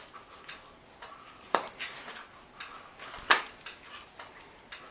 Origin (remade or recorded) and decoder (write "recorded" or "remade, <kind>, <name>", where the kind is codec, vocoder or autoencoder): recorded